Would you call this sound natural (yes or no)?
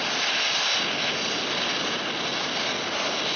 yes